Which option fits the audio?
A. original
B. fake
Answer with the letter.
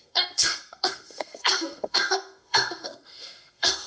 B